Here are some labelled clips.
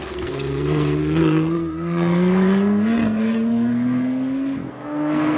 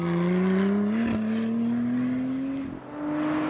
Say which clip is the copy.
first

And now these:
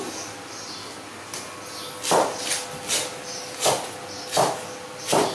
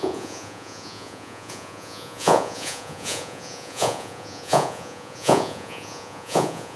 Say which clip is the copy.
second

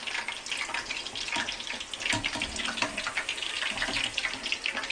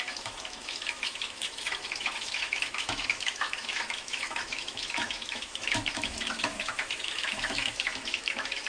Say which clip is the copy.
second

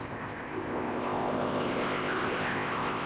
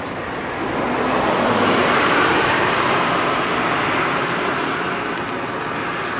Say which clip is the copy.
first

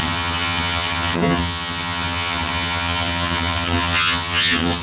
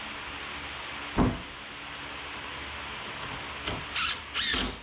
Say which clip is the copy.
first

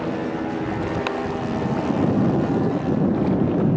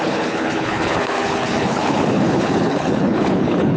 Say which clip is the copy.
second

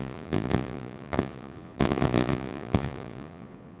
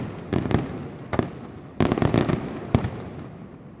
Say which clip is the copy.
first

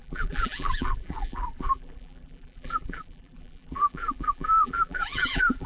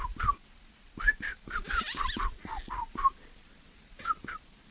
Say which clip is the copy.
first